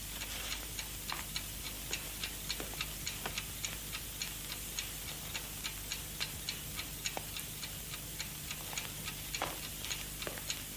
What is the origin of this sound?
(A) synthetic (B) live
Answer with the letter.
B